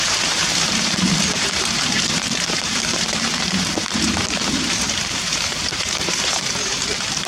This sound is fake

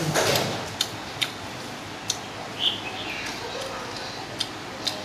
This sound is real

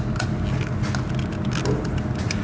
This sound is real